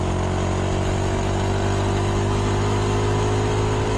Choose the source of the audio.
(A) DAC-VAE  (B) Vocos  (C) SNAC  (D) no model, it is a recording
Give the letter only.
D